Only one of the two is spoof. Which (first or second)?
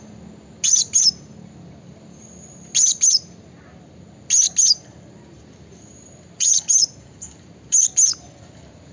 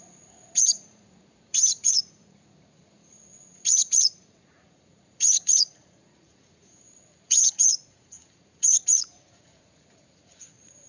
second